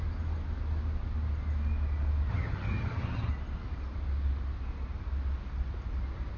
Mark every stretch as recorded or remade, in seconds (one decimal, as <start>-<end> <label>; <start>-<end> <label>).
0.0-2.3 recorded; 2.3-3.3 remade; 3.3-6.4 recorded